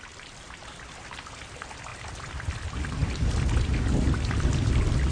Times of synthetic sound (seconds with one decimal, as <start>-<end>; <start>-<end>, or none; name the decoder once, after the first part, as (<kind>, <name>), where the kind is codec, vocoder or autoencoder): none